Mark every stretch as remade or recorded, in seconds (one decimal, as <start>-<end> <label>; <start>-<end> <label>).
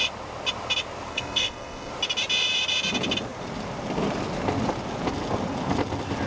0.0-1.1 recorded; 1.1-1.9 remade; 1.9-6.3 recorded